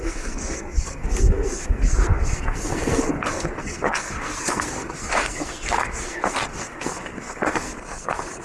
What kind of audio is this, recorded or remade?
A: remade